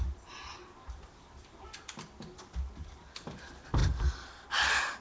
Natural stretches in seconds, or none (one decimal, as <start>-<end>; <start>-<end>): 0.0-5.0

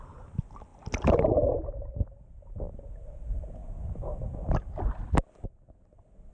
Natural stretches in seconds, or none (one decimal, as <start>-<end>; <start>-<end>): 0.0-6.3

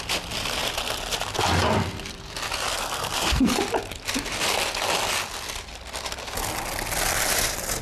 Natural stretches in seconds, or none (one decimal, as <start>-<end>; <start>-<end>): 0.0-2.7; 3.6-7.8

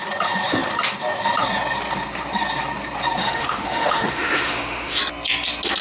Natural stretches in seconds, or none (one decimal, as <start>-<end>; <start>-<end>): 0.0-3.2; 5.0-5.8

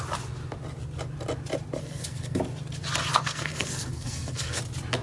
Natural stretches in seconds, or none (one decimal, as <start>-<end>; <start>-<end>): 0.0-1.8; 2.4-3.1; 4.6-5.0

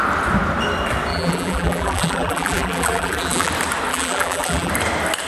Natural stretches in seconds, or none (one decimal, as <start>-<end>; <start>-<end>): 0.0-1.1; 3.5-3.9; 4.7-5.3